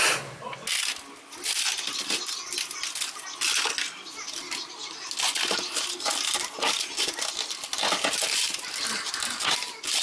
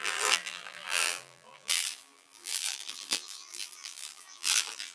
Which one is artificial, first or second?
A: second